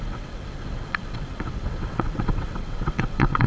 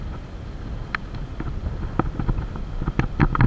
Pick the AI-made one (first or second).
first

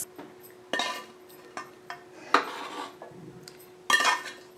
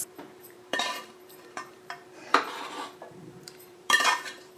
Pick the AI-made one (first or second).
second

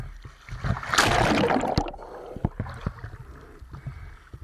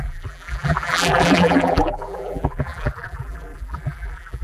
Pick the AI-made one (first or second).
second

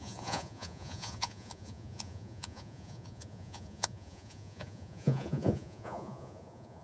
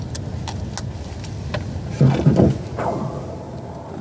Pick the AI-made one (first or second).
first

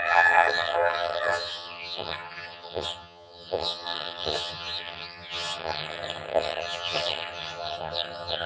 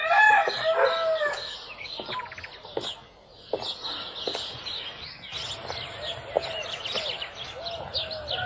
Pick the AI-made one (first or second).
first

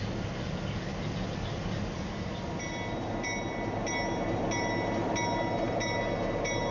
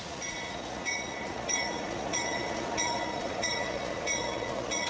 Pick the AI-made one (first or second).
second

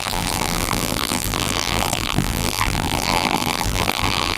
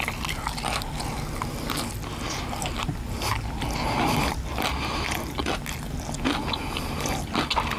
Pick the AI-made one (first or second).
first